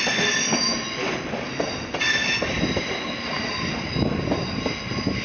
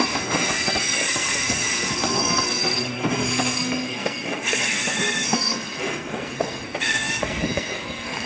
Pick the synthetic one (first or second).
second